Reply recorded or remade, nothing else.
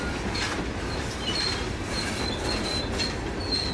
recorded